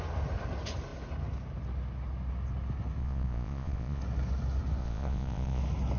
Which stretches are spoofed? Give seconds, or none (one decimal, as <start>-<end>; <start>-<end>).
3.0-4.0; 4.8-5.6